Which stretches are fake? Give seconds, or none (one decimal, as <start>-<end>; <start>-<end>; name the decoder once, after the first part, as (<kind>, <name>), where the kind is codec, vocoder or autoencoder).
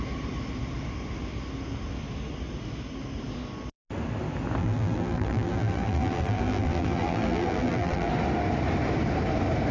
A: 4.6-8.1 (vocoder, BigVGAN v2)